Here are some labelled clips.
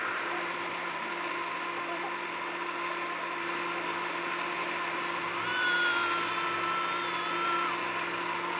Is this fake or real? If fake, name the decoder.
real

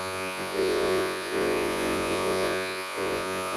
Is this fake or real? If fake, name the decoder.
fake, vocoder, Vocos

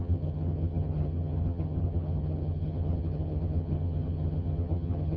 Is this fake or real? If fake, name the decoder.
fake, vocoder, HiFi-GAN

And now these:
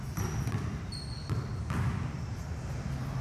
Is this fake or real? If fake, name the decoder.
real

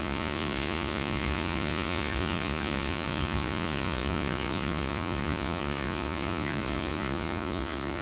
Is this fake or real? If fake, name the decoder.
fake, vocoder, Vocos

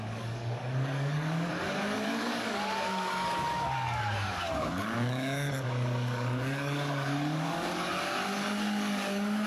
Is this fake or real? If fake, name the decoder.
fake, codec, DAC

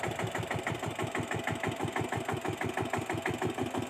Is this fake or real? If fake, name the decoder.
real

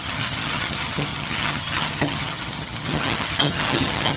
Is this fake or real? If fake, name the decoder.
fake, vocoder, HiFi-GAN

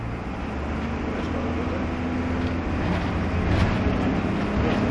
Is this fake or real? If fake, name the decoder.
real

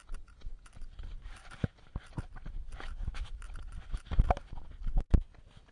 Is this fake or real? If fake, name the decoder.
real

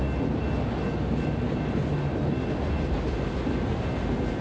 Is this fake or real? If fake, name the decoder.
real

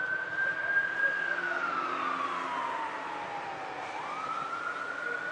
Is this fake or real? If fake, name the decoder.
real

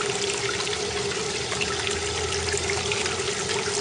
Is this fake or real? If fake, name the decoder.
real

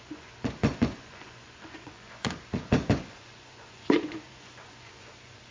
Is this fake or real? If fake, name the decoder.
fake, vocoder, Vocos